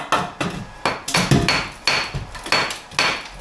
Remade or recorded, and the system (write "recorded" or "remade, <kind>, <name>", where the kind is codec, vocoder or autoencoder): recorded